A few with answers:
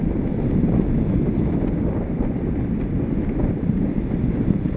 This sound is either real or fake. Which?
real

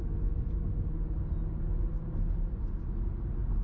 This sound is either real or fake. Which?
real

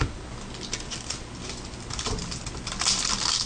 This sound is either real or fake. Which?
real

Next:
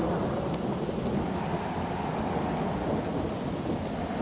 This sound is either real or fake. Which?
real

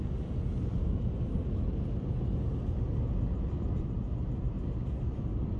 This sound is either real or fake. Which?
real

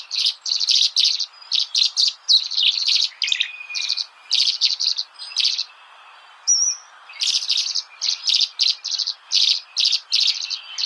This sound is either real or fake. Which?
real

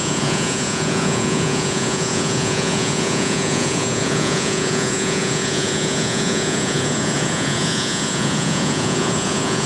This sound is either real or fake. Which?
fake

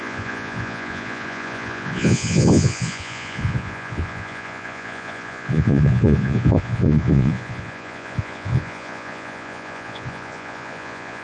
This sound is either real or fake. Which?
fake